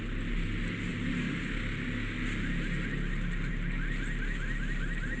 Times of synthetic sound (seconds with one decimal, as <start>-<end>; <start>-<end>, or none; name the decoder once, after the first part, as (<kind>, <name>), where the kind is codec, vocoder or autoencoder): none